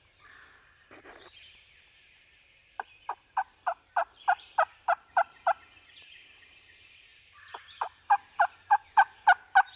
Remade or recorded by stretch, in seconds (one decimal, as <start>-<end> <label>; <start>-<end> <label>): 0.0-2.6 remade; 2.6-4.8 recorded; 4.8-9.8 remade

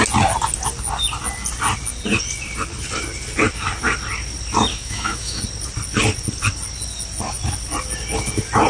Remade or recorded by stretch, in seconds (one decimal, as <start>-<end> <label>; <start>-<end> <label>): 0.0-4.7 recorded; 4.7-5.4 remade; 5.4-8.7 recorded

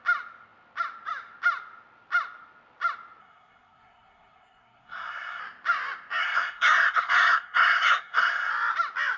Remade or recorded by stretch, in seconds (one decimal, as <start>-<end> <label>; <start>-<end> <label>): 0.0-3.2 recorded; 3.2-5.4 remade; 5.4-6.2 recorded; 6.2-8.5 remade; 8.5-9.2 recorded

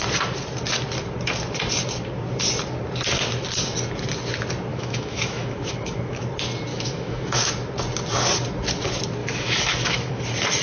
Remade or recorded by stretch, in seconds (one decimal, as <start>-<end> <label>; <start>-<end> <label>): 0.0-4.7 recorded; 4.7-6.2 remade; 6.2-6.7 recorded; 6.7-7.5 remade; 7.5-9.2 recorded; 9.2-10.2 remade; 10.2-10.6 recorded

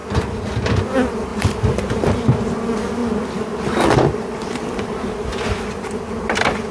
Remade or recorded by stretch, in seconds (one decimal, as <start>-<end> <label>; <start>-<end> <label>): 0.0-0.8 remade; 0.8-1.3 recorded; 1.3-2.1 remade; 2.1-3.0 recorded; 3.0-5.5 remade; 5.5-6.7 recorded

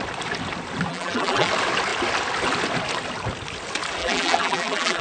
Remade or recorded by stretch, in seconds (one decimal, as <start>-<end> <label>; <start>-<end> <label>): 0.0-0.9 recorded; 0.9-1.5 remade; 1.5-4.0 recorded; 4.0-5.0 remade

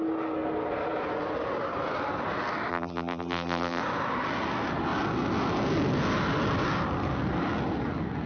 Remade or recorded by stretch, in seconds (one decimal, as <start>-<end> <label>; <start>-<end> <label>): 0.0-2.7 recorded; 2.7-3.8 remade; 3.8-8.3 recorded